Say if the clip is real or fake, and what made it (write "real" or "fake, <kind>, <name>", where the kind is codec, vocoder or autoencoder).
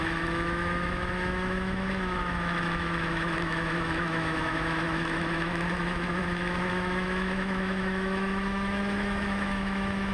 fake, autoencoder, DAC-VAE